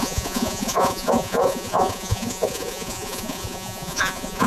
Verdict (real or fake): fake